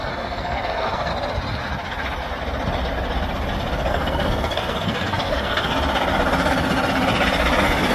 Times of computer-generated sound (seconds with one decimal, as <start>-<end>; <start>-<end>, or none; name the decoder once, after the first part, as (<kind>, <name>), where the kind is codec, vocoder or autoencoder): 0.0-1.1 (codec, SNAC); 3.9-5.7